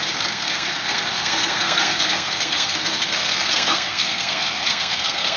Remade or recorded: remade